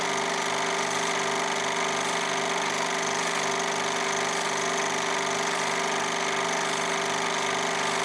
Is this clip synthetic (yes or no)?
no